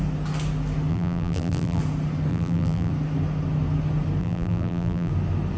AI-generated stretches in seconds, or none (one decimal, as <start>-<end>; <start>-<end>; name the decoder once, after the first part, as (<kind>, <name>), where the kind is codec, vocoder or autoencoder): 0.9-1.8 (vocoder, BigVGAN v2); 2.3-2.9; 4.2-5.1